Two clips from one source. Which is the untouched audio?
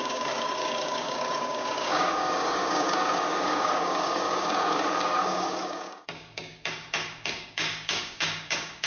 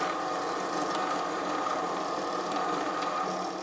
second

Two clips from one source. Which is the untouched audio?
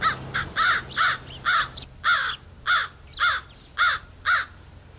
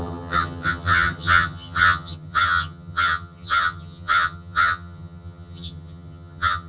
first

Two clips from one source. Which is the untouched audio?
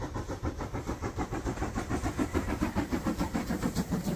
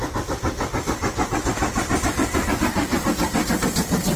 second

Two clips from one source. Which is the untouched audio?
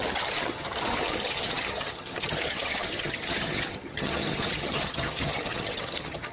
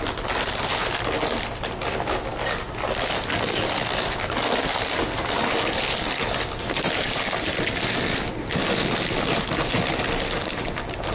second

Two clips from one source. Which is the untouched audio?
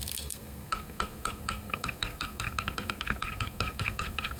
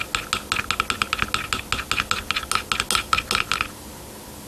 second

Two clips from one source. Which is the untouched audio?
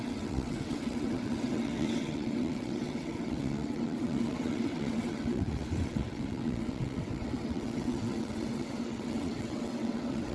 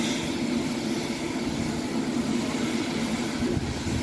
second